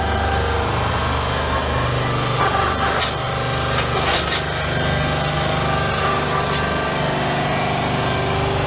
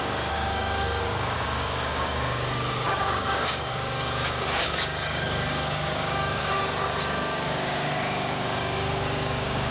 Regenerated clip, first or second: second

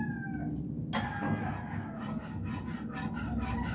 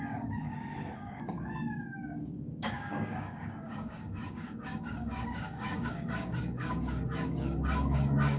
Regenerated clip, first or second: second